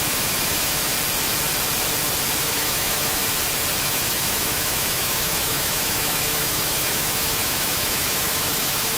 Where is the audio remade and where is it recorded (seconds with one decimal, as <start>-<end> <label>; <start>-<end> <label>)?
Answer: 0.0-0.9 remade; 0.9-2.4 recorded; 2.4-3.2 remade; 3.2-3.8 recorded; 3.8-9.0 remade